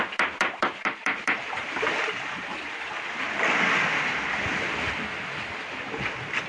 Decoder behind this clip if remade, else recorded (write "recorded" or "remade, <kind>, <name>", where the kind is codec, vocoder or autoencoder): remade, vocoder, BigVGAN v2